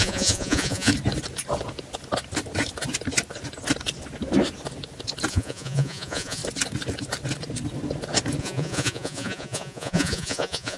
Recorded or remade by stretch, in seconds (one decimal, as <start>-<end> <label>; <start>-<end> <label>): 0.0-0.9 remade; 0.9-5.3 recorded; 5.3-6.4 remade; 6.4-8.4 recorded; 8.4-10.8 remade